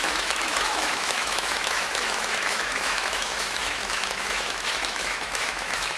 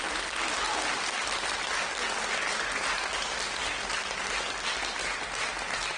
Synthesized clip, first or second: first